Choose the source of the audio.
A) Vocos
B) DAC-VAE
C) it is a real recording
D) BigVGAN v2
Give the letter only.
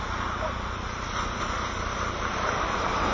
D